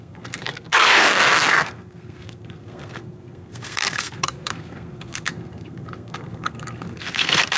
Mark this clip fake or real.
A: fake